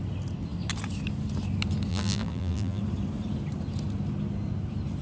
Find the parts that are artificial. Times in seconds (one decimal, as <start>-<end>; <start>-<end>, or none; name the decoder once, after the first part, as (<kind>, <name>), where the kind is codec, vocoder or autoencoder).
1.9-2.8 (vocoder, BigVGAN v2)